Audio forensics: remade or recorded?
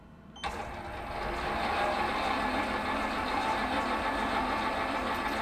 recorded